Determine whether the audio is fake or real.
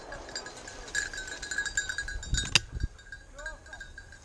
real